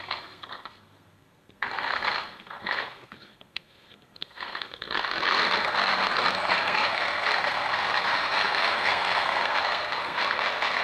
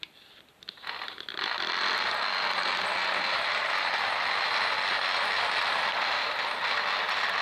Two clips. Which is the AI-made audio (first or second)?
first